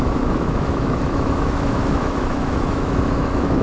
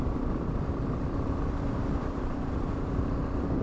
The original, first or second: second